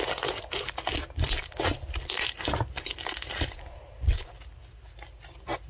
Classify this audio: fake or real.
real